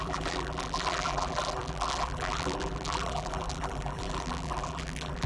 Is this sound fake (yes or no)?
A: yes